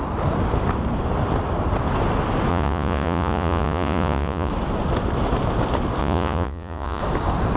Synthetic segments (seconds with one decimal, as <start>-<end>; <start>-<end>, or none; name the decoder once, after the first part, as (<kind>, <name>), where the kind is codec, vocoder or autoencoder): 2.5-4.5 (vocoder, Vocos); 6.0-7.0